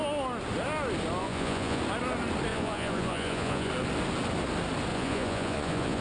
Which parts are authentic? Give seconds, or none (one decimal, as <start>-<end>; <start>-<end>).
0.0-1.2; 1.8-2.5; 3.7-4.9